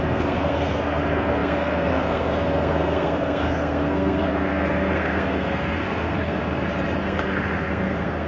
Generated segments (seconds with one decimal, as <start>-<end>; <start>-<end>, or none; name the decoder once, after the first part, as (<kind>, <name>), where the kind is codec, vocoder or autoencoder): 0.0-6.4 (codec, SNAC); 7.0-8.3